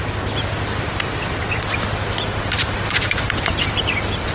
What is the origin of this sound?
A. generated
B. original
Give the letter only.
B